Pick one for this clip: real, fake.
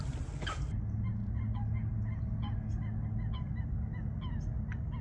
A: real